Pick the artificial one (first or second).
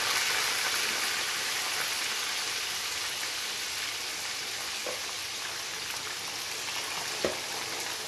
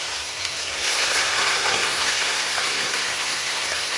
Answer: second